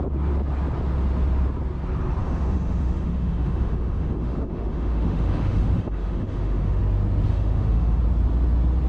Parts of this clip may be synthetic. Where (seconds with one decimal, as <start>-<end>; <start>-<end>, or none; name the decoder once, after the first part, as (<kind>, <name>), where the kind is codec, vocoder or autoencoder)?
2.2-6.8 (autoencoder, DAC-VAE); 7.3-8.0